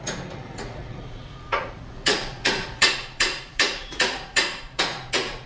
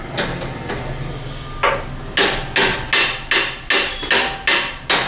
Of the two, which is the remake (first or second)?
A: first